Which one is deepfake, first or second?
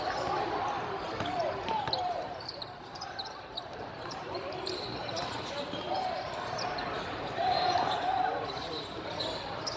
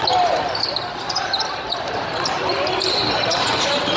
first